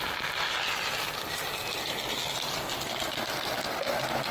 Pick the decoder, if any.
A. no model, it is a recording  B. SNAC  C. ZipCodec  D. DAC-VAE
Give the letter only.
A